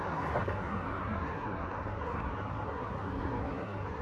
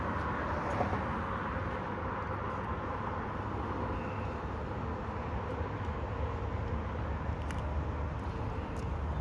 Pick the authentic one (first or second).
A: second